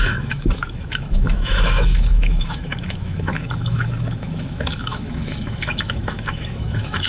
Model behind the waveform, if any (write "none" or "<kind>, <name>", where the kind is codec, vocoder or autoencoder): autoencoder, DAC-VAE